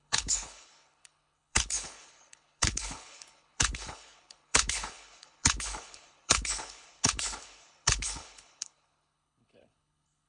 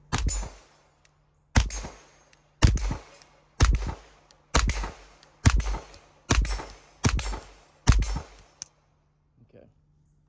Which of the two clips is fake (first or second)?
first